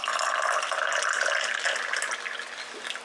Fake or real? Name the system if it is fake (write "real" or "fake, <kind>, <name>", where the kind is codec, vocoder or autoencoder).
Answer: real